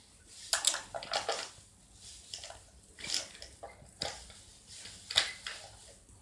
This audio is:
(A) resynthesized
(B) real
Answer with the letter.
B